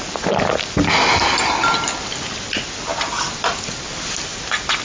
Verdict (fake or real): real